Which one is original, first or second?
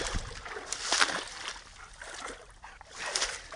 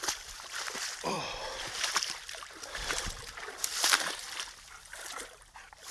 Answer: first